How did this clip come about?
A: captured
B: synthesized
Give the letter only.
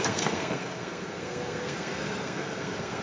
B